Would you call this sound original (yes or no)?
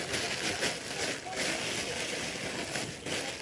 yes